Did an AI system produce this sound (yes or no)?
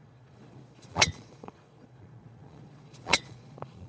yes